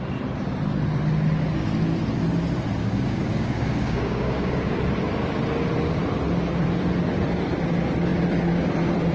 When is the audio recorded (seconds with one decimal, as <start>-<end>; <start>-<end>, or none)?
0.0-2.8; 4.8-9.1